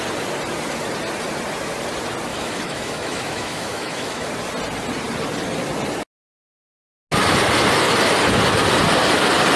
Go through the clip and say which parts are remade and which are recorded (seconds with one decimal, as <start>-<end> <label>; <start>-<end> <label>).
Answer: 0.0-2.3 recorded; 2.3-4.3 remade; 4.3-9.6 recorded

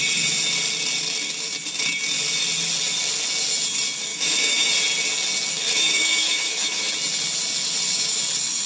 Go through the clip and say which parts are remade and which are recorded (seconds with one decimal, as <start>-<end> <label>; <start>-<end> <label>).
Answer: 0.0-4.1 recorded; 4.1-4.7 remade; 4.7-5.8 recorded; 5.8-6.9 remade; 6.9-8.7 recorded

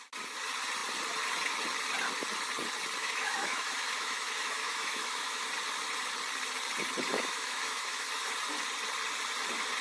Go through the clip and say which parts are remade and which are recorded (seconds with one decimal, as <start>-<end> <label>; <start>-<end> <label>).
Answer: 0.0-3.0 recorded; 3.0-5.4 remade; 5.4-7.1 recorded; 7.1-8.1 remade; 8.1-9.8 recorded

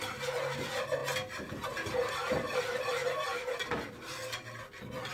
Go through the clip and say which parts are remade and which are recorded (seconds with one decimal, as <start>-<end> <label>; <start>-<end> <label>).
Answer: 0.0-5.1 recorded

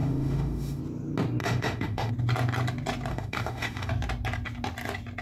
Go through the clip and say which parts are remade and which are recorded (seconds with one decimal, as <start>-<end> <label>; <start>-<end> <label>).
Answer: 0.0-0.8 remade; 0.8-1.4 recorded; 1.4-2.1 remade; 2.1-3.1 recorded; 3.1-3.9 remade; 3.9-5.2 recorded

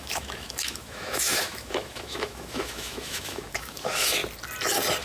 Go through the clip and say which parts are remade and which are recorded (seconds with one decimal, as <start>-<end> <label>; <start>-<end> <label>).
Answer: 0.0-4.2 remade; 4.2-5.0 recorded